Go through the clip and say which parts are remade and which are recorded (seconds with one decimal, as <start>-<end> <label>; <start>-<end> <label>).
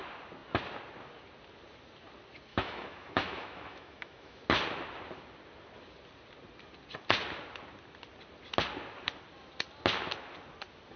0.0-2.5 recorded; 2.5-4.4 remade; 4.4-11.0 recorded